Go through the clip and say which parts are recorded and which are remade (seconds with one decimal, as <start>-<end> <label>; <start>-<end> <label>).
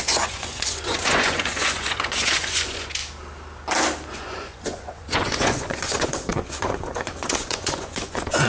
0.0-3.0 remade; 3.0-4.1 recorded; 4.1-8.5 remade